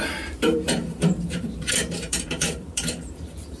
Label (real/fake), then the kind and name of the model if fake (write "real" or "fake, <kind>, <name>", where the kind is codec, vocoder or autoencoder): fake, vocoder, BigVGAN v2